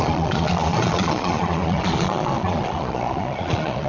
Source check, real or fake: fake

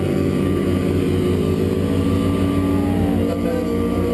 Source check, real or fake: real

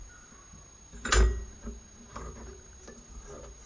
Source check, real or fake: real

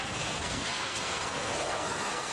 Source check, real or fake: fake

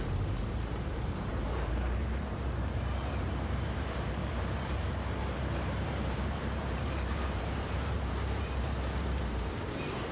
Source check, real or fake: fake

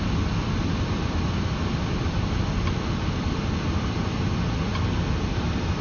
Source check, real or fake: real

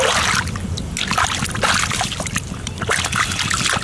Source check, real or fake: real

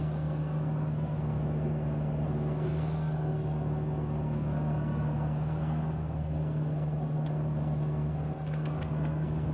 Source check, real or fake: fake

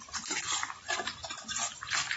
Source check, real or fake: real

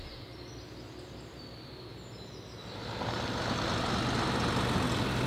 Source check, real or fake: real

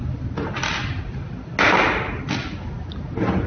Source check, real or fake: real